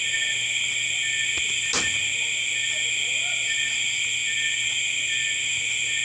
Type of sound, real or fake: real